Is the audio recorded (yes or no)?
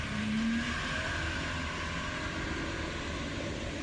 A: yes